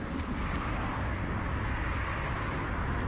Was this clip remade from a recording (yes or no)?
no